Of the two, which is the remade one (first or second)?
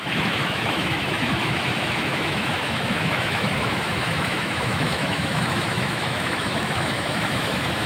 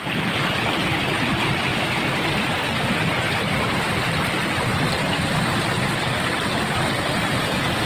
first